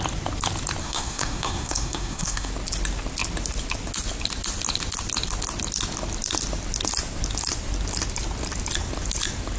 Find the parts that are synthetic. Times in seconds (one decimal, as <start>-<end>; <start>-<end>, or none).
0.8-2.5